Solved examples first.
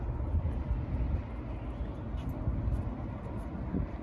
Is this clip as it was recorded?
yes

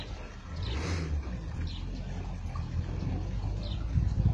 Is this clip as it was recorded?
yes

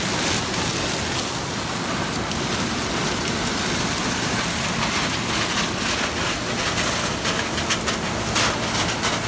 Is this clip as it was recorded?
yes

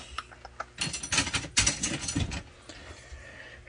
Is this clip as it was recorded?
yes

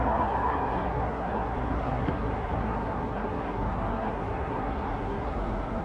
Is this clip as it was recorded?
no